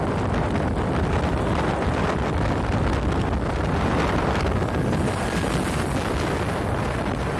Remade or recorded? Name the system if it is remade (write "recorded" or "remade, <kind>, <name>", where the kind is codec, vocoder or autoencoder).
recorded